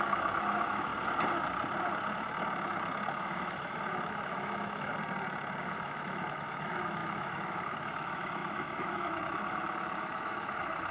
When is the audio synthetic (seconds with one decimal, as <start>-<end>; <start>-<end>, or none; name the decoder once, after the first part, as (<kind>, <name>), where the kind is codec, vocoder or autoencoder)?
0.0-0.9 (autoencoder, DAC-VAE); 3.2-4.9; 5.6-10.9

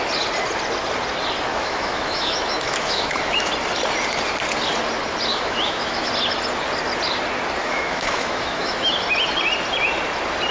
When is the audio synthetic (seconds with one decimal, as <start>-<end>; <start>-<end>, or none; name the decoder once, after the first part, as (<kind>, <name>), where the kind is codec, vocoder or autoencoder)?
1.5-3.5 (autoencoder, DAC-VAE); 5.3-6.1; 7.6-9.0

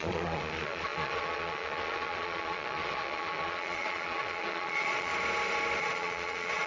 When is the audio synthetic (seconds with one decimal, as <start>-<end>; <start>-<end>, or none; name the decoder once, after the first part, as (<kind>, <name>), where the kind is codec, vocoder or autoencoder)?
0.0-5.1 (vocoder, Vocos); 5.8-6.7

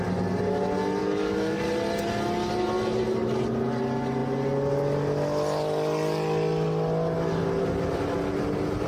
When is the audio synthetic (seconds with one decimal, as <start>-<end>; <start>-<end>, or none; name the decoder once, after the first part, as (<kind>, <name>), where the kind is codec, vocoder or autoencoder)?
1.0-1.6 (codec, DAC)

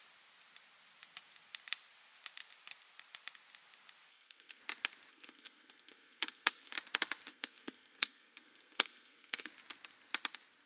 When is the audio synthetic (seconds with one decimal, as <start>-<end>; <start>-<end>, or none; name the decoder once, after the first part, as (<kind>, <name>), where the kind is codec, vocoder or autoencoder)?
4.1-4.6 (codec, SNAC); 5.1-6.7; 7.3-9.5

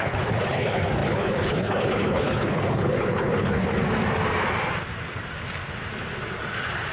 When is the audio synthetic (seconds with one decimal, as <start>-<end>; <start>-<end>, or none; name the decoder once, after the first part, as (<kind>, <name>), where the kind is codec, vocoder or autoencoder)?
0.0-3.6 (codec, HILCodec)

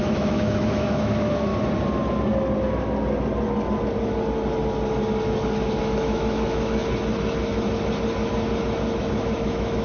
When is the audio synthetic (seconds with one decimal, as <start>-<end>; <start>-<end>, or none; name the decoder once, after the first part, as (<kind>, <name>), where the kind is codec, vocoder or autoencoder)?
0.0-1.5 (autoencoder, DAC-VAE); 5.8-6.8; 9.0-9.8